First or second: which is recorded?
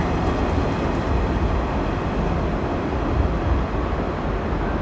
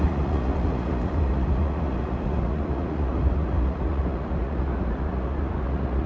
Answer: first